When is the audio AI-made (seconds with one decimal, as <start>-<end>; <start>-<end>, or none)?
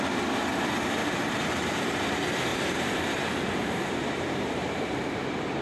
1.0-2.1; 2.5-5.0